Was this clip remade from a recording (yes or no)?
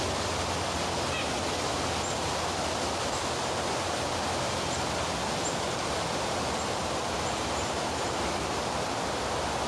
no